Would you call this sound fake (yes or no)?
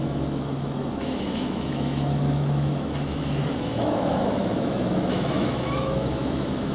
yes